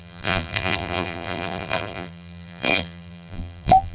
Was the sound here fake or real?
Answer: fake